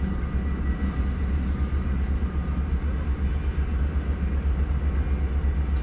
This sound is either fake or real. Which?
real